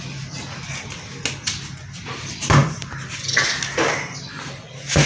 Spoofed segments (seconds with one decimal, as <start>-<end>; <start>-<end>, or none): none